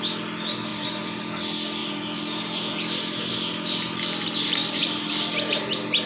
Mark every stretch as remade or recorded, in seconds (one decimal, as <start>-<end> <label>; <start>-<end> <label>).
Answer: 0.0-0.7 recorded; 0.7-1.2 remade; 1.2-1.8 recorded; 1.8-5.1 remade; 5.1-6.1 recorded